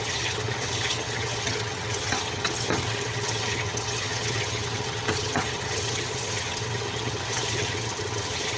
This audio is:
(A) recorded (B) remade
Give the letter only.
B